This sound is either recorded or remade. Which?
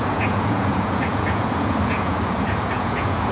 remade